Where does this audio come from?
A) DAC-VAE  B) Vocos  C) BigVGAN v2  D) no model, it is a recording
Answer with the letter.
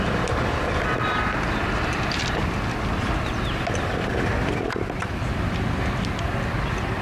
D